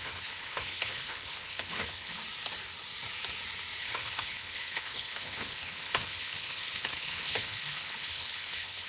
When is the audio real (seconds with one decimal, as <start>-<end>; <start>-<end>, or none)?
2.2-3.8